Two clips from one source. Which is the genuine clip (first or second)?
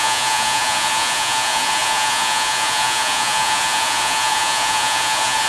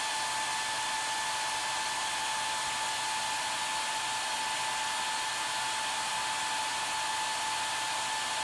second